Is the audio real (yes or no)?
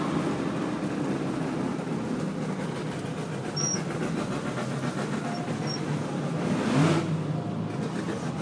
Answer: yes